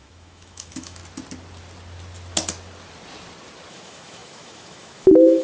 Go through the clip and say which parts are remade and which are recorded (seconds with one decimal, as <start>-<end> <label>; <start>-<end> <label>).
0.0-1.0 remade; 1.0-3.7 recorded; 3.7-5.4 remade